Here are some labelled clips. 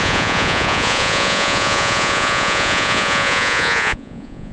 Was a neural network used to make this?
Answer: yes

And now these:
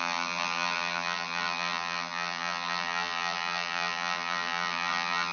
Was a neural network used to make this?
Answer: yes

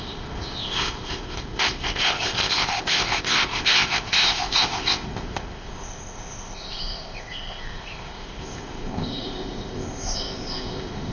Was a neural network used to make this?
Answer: yes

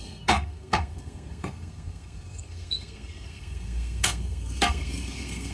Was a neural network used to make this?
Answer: yes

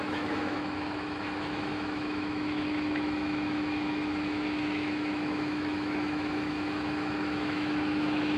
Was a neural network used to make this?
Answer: yes